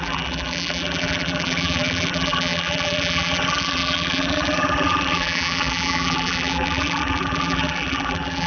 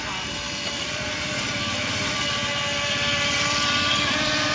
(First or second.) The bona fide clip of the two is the second